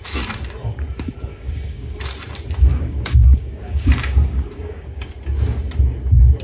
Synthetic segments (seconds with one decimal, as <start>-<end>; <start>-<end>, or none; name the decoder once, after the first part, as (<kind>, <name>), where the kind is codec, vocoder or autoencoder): 1.3-2.0 (codec, DAC); 2.7-5.1